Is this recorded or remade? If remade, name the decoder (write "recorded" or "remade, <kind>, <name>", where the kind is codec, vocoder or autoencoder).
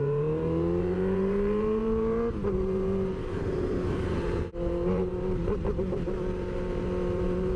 remade, vocoder, BigVGAN v2